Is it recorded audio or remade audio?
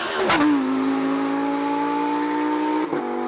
recorded